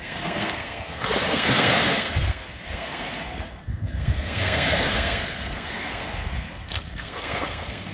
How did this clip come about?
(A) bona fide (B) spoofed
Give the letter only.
B